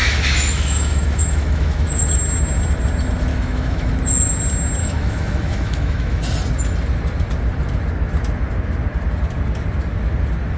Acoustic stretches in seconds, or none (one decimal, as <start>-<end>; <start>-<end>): 1.9-3.3; 3.9-4.8; 6.2-10.6